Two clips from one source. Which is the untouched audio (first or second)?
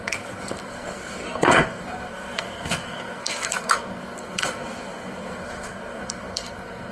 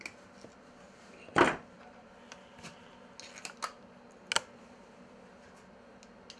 second